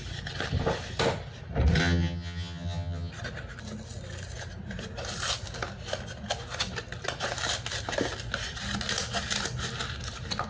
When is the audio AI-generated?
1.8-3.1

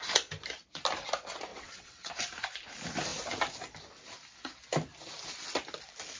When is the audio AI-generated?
1.5-2.1

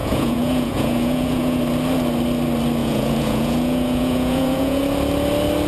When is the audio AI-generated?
0.0-1.6; 2.8-4.8

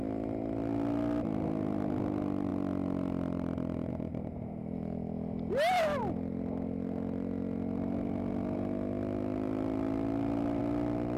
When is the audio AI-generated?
none

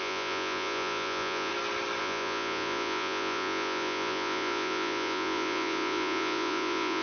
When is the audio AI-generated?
0.0-1.5; 2.0-7.0

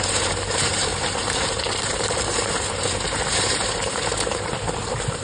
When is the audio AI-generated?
0.0-5.2

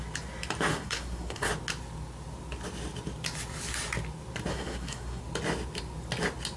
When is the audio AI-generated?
0.7-1.5; 4.5-5.2